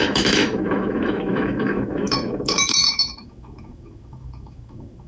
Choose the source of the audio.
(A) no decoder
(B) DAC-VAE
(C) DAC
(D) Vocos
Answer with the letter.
B